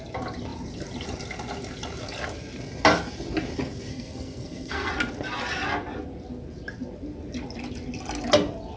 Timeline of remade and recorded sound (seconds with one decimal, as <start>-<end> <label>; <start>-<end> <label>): 0.0-3.9 recorded; 3.9-4.9 remade; 4.9-8.8 recorded

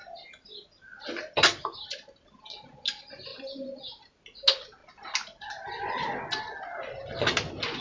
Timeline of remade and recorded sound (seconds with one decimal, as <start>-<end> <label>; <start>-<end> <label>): 0.0-7.8 recorded